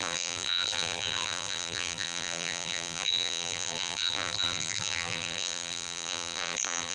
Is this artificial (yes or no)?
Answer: yes